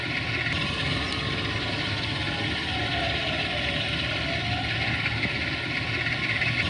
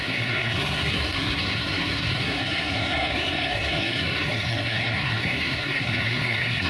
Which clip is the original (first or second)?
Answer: first